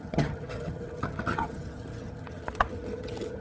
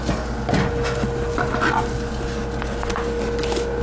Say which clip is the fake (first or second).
first